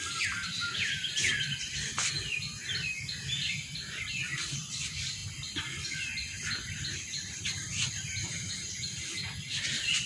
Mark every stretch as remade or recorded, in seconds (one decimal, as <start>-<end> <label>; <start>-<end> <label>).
0.0-10.1 recorded

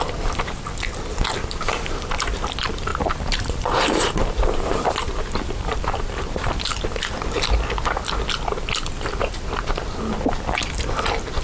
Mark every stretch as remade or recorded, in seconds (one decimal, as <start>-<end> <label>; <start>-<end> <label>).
0.0-2.9 recorded; 2.9-6.5 remade; 6.5-11.4 recorded

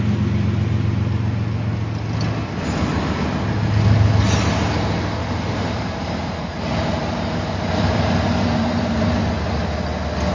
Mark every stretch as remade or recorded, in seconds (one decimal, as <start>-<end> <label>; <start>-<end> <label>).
0.0-5.2 recorded; 5.2-9.3 remade; 9.3-10.3 recorded

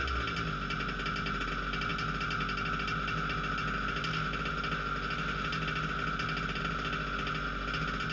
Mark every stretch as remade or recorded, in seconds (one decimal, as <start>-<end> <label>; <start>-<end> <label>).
0.0-8.1 recorded

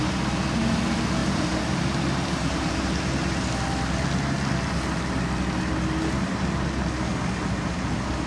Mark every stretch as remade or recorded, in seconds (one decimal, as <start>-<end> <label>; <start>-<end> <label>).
0.0-1.2 recorded; 1.2-1.9 remade; 1.9-2.4 recorded; 2.4-3.5 remade; 3.5-8.3 recorded

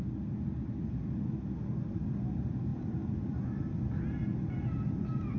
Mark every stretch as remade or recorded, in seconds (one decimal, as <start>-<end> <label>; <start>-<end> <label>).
0.0-5.4 recorded

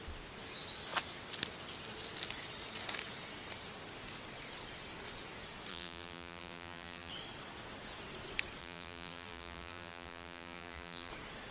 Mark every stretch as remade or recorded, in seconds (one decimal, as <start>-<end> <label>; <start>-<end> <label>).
0.0-5.7 recorded; 5.7-7.1 remade; 7.1-8.6 recorded; 8.6-11.1 remade; 11.1-11.5 recorded

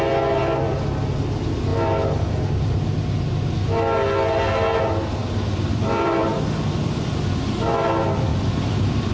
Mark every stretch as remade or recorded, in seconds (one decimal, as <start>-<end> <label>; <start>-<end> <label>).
0.0-5.2 recorded; 5.2-6.3 remade; 6.3-8.3 recorded; 8.3-9.1 remade